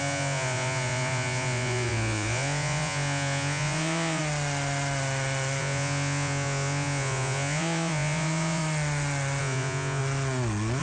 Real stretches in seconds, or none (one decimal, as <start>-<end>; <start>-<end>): 4.2-5.6; 8.6-9.4; 10.0-10.8